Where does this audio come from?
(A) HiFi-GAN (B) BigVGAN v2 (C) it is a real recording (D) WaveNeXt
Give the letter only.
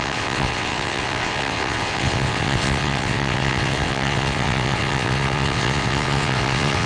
D